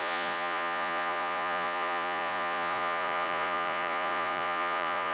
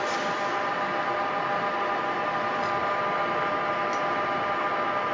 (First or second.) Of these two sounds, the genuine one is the second